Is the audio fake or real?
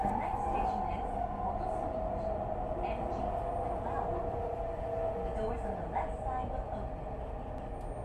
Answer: real